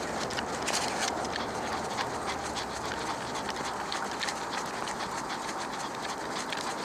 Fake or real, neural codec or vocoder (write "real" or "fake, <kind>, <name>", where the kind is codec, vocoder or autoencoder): real